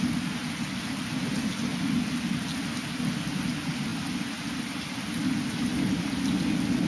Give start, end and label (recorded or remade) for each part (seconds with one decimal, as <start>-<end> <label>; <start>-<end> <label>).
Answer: 0.0-6.9 recorded